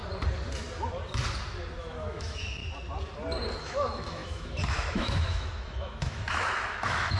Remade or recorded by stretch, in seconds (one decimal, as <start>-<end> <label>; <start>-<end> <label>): 0.0-1.8 recorded; 1.8-2.6 remade; 2.6-3.6 recorded; 3.6-7.2 remade